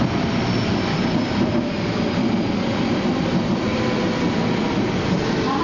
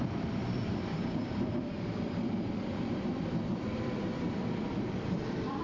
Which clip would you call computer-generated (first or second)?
second